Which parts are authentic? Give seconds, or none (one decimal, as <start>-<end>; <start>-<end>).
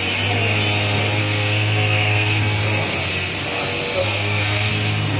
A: 0.0-1.2; 2.4-4.0; 4.7-5.2